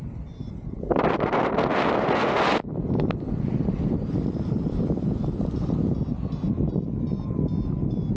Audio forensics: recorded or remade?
recorded